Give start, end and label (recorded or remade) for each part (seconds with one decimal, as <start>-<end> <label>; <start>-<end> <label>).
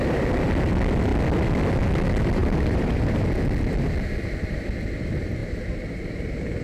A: 0.0-2.4 recorded; 2.4-3.2 remade; 3.2-5.4 recorded; 5.4-6.6 remade